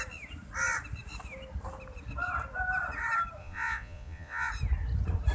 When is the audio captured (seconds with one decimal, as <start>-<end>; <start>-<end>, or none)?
0.0-3.4; 4.5-5.3